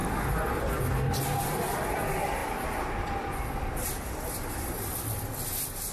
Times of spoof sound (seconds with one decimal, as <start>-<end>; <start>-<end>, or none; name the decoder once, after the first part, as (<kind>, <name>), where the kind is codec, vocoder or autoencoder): none